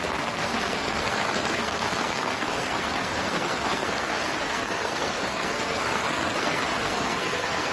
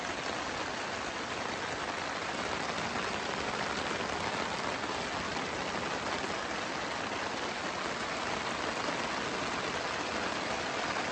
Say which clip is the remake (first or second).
first